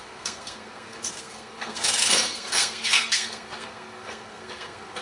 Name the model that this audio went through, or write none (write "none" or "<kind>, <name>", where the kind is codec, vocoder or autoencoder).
codec, SNAC